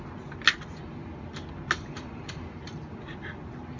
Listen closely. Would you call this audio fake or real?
real